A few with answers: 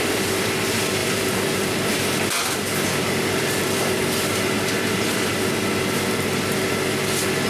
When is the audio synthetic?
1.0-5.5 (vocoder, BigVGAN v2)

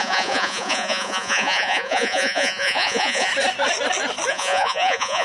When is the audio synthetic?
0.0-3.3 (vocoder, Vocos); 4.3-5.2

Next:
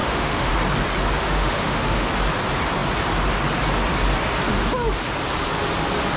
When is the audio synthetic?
0.0-0.5 (autoencoder, DAC-VAE); 1.2-2.1

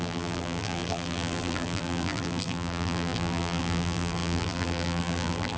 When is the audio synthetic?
0.0-5.6 (vocoder, BigVGAN v2)

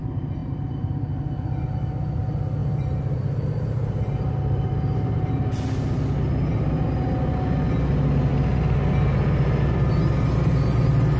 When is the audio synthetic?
0.4-1.1 (vocoder, BigVGAN v2); 2.6-5.3